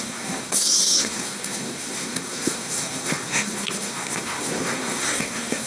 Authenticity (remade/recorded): remade